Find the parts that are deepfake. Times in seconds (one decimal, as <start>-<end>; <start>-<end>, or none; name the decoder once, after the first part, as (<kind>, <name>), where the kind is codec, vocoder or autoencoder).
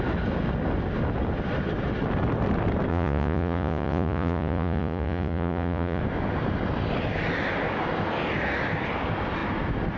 2.9-6.0 (vocoder, Vocos)